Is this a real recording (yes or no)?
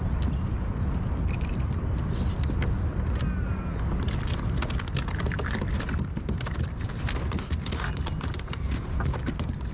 yes